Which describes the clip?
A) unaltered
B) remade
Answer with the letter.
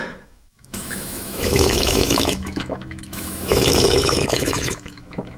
B